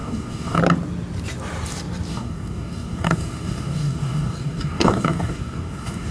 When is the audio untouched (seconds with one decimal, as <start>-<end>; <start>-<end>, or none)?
0.6-2.1